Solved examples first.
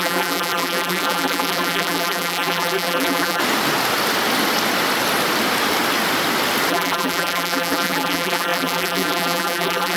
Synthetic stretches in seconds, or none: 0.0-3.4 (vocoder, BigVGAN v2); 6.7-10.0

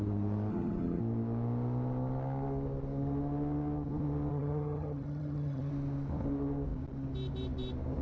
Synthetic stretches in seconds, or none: 0.5-1.0 (vocoder, HiFi-GAN); 4.3-5.7

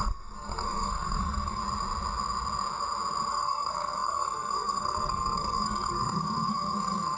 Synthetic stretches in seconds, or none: 0.0-1.6 (codec, SNAC); 3.3-7.2

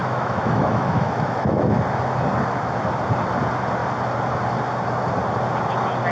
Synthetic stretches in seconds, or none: 0.0-1.8 (autoencoder, DAC-VAE)

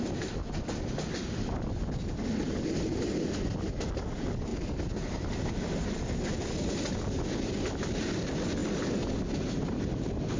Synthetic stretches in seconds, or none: none